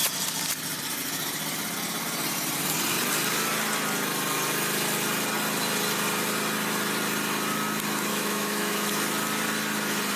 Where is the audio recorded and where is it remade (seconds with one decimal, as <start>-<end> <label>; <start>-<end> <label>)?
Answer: 0.0-8.1 recorded; 8.1-8.9 remade; 8.9-10.2 recorded